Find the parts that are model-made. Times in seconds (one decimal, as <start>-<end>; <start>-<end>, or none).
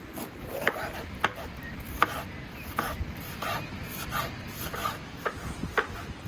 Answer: 4.8-5.3